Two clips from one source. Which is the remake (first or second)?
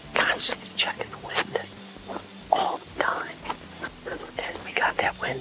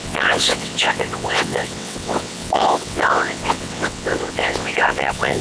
second